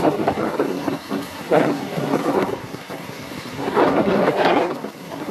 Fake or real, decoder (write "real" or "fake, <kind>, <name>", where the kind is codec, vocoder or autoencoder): fake, codec, SNAC